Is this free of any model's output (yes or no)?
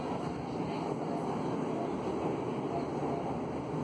yes